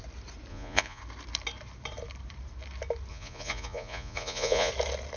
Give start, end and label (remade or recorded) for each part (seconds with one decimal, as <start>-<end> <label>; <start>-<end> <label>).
0.0-0.5 recorded; 0.5-1.0 remade; 1.0-3.1 recorded; 3.1-4.7 remade; 4.7-5.2 recorded

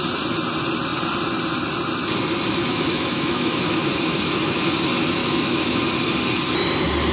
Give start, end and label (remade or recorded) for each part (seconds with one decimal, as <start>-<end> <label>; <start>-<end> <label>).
0.0-2.7 recorded; 2.7-3.7 remade; 3.7-5.2 recorded; 5.2-5.8 remade; 5.8-7.1 recorded

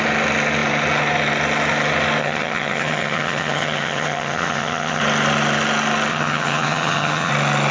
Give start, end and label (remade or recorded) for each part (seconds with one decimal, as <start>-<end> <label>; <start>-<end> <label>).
0.0-2.2 recorded; 2.2-5.0 remade; 5.0-6.1 recorded; 6.1-7.3 remade; 7.3-7.7 recorded

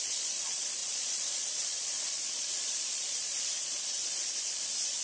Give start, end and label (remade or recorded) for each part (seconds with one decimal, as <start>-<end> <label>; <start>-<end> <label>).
0.0-5.0 remade

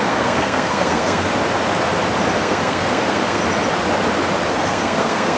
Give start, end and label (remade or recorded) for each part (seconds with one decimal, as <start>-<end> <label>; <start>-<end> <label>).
0.0-1.3 remade; 1.3-2.3 recorded; 2.3-3.4 remade; 3.4-4.5 recorded; 4.5-5.4 remade